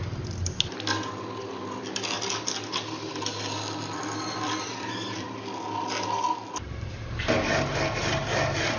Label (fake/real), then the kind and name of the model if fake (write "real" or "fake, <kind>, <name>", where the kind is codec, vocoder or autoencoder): real